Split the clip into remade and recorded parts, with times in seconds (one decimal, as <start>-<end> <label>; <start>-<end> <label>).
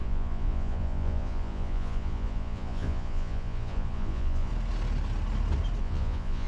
0.0-4.5 remade; 4.5-5.8 recorded; 5.8-6.5 remade